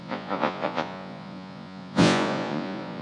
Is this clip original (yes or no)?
no